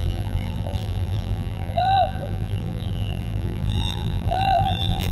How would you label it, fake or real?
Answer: fake